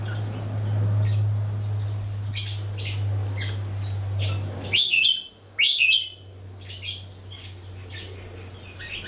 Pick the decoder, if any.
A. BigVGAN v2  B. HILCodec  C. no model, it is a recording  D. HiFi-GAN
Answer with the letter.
C